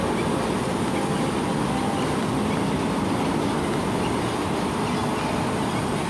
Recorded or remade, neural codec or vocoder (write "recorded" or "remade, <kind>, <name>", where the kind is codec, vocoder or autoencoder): recorded